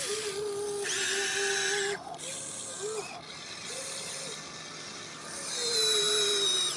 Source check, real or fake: real